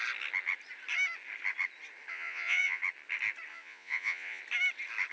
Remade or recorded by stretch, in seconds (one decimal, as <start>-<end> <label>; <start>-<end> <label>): 0.0-2.1 recorded; 2.1-2.8 remade; 2.8-3.5 recorded; 3.5-4.4 remade; 4.4-5.1 recorded